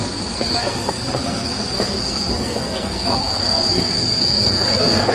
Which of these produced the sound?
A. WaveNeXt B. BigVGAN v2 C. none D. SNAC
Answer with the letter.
D